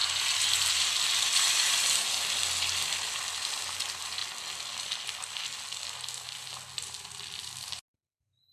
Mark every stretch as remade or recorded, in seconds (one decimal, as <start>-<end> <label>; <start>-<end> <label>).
0.0-8.5 recorded